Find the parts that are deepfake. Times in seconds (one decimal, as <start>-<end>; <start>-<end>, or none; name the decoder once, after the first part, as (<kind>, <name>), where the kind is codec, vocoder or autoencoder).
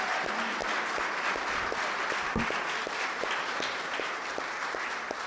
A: 0.0-0.6 (vocoder, BigVGAN v2); 2.7-5.3